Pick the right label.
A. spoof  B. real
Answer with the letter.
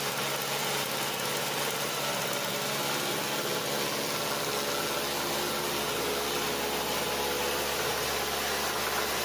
B